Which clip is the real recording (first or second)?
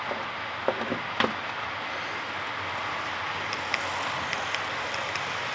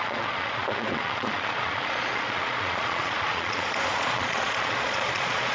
first